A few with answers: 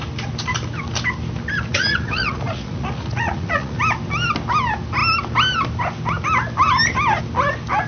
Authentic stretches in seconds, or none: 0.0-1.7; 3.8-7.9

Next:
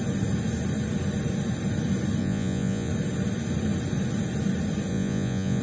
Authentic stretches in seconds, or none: 0.0-2.2; 2.9-4.9

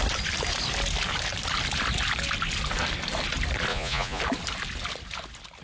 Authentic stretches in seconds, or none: 0.0-3.7; 4.2-5.6

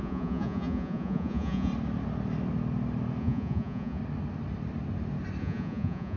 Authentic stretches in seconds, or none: 1.7-3.2; 4.0-5.4